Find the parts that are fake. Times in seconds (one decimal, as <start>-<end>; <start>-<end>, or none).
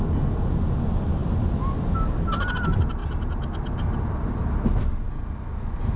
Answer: 1.2-1.8